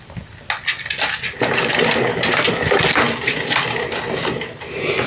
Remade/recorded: recorded